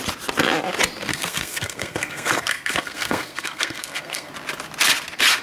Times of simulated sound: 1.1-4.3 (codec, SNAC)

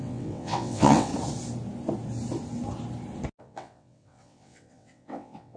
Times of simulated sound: 0.0-1.1 (vocoder, WaveNeXt); 3.4-5.6